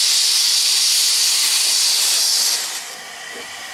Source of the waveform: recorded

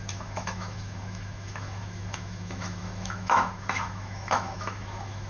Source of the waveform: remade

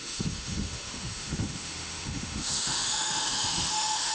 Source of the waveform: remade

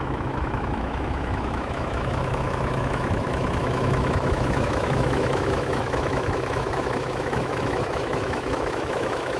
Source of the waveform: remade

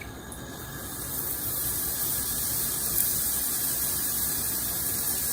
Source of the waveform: recorded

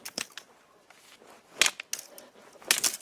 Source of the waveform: recorded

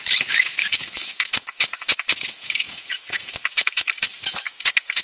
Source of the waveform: remade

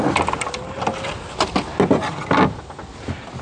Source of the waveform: recorded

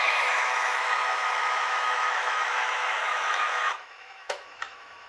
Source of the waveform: remade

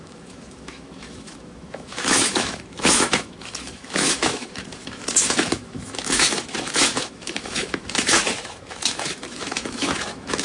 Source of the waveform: remade